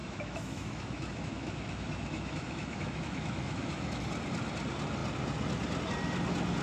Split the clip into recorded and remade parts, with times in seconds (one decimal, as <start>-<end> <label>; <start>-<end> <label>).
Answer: 0.0-4.0 remade; 4.0-6.6 recorded